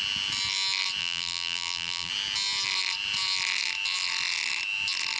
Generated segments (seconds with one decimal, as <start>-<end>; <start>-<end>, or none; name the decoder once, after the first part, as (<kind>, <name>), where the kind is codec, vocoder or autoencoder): 1.0-2.1 (vocoder, BigVGAN v2)